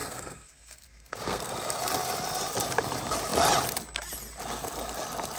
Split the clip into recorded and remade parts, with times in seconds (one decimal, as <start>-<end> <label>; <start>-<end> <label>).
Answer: 0.0-1.5 remade; 1.5-5.4 recorded